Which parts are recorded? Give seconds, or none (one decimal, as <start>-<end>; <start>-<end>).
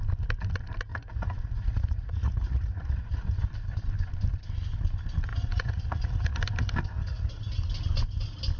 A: 0.0-0.9; 3.5-5.3; 6.4-7.0; 7.5-8.6